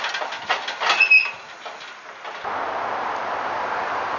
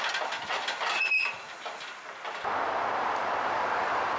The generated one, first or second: second